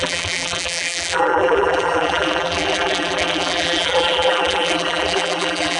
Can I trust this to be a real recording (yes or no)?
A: no